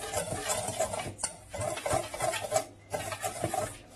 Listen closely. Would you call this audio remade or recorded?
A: recorded